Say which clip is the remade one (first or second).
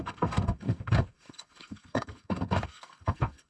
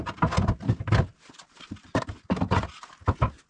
first